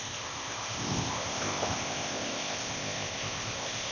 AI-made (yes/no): yes